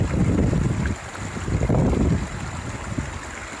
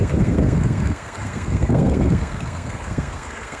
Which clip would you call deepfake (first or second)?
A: second